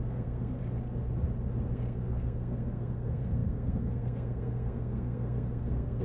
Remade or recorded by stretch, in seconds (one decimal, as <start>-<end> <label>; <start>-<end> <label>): 0.0-0.6 remade; 0.6-1.7 recorded; 1.7-6.0 remade